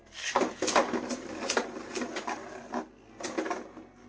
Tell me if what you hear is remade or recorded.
recorded